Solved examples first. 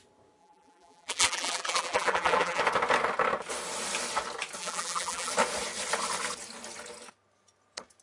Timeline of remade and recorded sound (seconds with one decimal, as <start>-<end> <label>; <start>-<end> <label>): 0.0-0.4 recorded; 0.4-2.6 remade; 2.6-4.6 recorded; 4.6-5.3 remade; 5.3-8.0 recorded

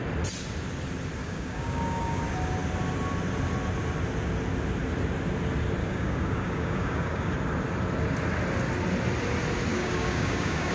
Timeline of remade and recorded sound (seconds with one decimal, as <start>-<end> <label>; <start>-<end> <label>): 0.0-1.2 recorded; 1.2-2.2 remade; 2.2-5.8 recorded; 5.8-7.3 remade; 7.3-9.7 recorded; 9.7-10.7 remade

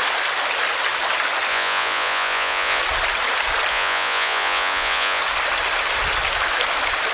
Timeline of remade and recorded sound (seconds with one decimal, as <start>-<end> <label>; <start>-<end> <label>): 0.0-1.5 recorded; 1.5-2.8 remade; 2.8-3.7 recorded; 3.7-5.2 remade; 5.2-7.1 recorded